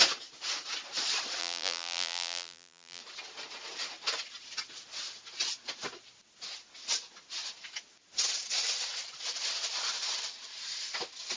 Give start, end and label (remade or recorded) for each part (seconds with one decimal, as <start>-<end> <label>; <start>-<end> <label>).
0.0-1.4 recorded; 1.4-3.0 remade; 3.0-11.4 recorded